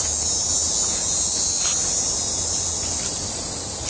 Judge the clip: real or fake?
real